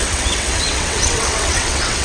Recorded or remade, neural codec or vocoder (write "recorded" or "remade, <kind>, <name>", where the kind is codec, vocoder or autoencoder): remade, vocoder, WaveNeXt